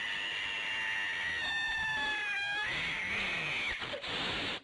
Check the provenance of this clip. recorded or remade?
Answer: recorded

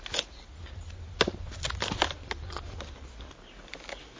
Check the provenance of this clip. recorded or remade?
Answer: recorded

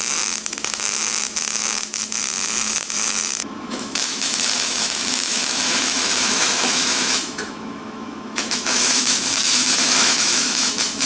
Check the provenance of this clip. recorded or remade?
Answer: remade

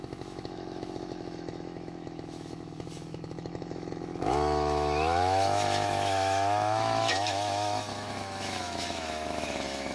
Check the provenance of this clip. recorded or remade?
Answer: remade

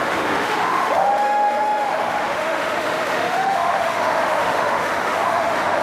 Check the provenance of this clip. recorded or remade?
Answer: remade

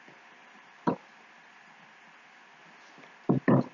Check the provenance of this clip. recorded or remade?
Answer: recorded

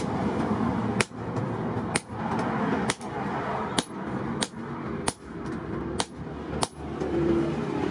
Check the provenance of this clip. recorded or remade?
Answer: recorded